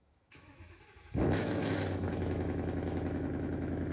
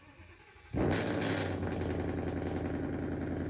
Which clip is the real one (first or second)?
second